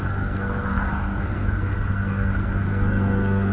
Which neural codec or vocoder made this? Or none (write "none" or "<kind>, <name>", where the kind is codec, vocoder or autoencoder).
codec, SNAC